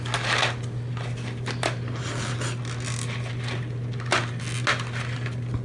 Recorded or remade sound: recorded